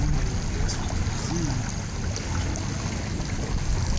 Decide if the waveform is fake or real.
real